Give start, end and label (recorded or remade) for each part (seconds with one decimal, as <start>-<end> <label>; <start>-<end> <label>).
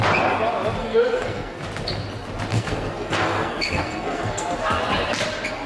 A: 0.0-0.8 recorded; 0.8-1.6 remade; 1.6-2.5 recorded; 2.5-4.8 remade; 4.8-5.7 recorded